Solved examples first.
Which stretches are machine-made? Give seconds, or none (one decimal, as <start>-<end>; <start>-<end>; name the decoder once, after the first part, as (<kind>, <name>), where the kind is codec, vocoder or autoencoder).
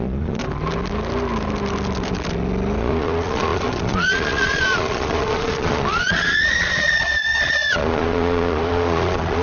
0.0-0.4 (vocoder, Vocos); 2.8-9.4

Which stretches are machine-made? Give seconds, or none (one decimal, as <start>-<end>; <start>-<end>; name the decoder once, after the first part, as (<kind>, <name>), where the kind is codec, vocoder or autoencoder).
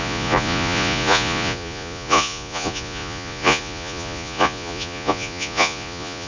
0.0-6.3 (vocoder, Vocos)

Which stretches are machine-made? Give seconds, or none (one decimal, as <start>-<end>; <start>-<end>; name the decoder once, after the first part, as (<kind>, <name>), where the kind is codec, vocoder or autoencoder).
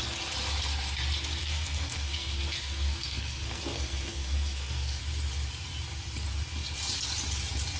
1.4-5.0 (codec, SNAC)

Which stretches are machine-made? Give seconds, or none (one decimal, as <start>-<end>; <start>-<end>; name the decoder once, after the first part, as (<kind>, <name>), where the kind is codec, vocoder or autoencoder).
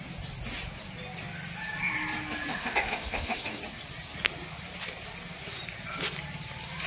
2.5-3.6 (autoencoder, DAC-VAE)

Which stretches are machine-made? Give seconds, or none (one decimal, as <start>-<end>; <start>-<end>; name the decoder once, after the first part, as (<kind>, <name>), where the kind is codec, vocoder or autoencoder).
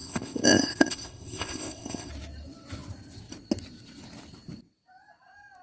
0.0-2.1 (codec, ZipCodec)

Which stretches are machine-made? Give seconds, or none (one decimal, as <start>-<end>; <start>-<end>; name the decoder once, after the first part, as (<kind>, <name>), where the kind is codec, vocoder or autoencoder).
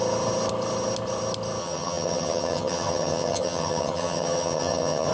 1.6-5.1 (vocoder, HiFi-GAN)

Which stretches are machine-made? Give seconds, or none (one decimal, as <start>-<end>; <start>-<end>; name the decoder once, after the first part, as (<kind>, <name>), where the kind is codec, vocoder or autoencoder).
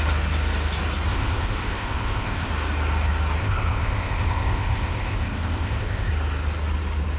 1.1-2.5 (codec, ZipCodec); 3.4-6.1